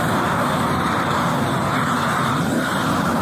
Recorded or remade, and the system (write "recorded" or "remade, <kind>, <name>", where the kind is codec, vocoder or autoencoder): remade, vocoder, BigVGAN v2